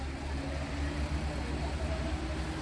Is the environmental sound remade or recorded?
recorded